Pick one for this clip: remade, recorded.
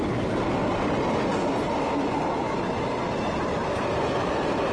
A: recorded